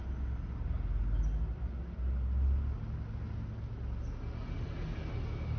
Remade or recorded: recorded